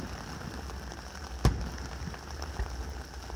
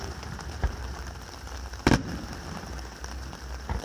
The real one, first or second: first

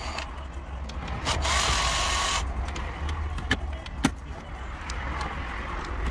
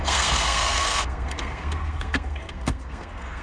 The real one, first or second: first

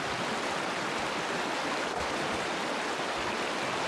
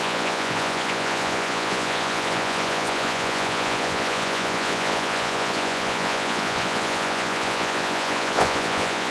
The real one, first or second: first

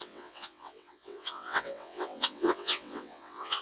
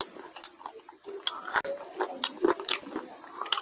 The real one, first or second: second